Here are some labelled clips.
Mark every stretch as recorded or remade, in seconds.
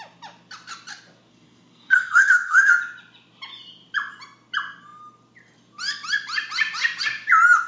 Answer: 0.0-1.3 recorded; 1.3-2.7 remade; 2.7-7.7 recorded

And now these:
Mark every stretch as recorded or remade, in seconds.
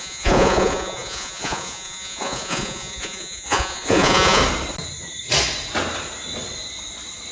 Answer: 0.0-4.4 remade; 4.4-7.3 recorded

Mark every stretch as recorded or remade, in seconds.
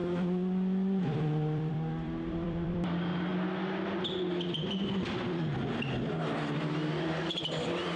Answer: 0.0-3.3 remade; 3.3-6.9 recorded; 6.9-8.0 remade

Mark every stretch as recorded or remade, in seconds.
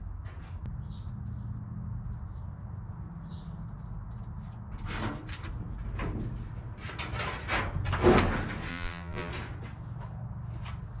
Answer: 0.0-8.7 recorded; 8.7-9.3 remade; 9.3-11.0 recorded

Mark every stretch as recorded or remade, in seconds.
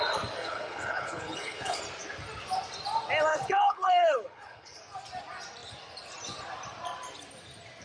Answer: 0.0-0.4 recorded; 0.4-1.8 remade; 1.8-3.3 recorded; 3.3-4.8 remade; 4.8-7.8 recorded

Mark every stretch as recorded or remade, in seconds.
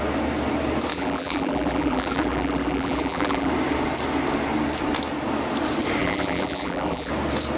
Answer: 0.0-0.9 recorded; 0.9-3.5 remade; 3.5-6.0 recorded; 6.0-7.1 remade; 7.1-7.6 recorded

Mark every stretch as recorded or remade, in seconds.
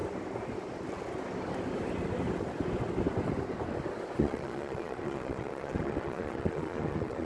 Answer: 0.0-4.2 recorded; 4.2-7.2 remade